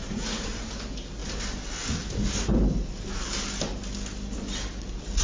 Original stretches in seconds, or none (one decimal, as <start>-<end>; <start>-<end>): 0.7-5.2